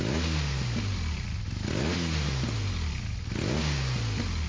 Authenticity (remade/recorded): recorded